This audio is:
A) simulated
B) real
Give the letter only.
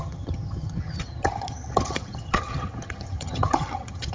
A